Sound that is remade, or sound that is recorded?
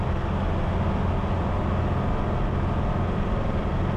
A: recorded